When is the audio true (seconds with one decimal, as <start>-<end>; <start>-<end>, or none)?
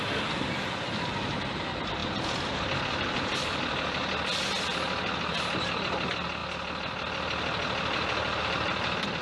0.0-9.2